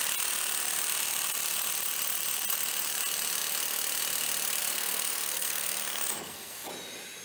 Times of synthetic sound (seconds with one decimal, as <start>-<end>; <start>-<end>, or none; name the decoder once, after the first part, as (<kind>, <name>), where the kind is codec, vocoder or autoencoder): 4.6-6.7 (codec, SNAC)

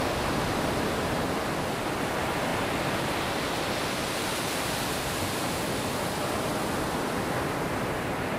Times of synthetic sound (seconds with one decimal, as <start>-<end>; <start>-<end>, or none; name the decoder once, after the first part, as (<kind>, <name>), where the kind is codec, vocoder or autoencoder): none

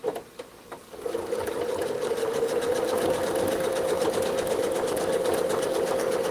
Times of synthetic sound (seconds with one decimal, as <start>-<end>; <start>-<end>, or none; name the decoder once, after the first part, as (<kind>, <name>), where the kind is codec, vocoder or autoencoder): 0.8-1.6 (codec, DAC); 2.2-6.3

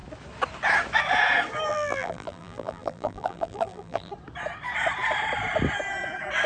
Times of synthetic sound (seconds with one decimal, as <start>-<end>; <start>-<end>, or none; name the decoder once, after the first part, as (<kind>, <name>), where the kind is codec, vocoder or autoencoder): 1.7-4.1 (vocoder, BigVGAN v2)

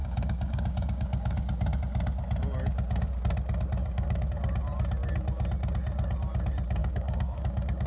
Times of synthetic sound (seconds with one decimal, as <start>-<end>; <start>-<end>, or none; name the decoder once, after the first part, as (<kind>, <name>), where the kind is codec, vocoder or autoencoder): 0.0-1.8 (codec, DAC); 3.8-4.3; 6.8-7.9

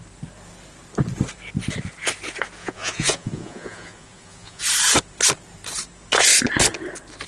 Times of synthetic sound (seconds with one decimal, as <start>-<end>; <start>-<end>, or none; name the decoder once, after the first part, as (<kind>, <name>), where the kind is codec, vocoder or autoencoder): 2.6-4.6 (vocoder, Vocos)